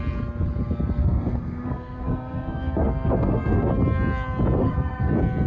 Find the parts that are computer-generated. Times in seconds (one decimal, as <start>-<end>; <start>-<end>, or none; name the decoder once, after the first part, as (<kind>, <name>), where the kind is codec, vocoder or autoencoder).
1.0-3.7 (codec, SNAC); 4.6-5.1